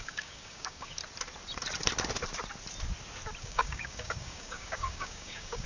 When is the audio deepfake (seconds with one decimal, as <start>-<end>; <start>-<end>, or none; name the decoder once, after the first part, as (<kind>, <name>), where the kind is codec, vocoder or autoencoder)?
0.0-1.0 (codec, DAC); 3.4-5.7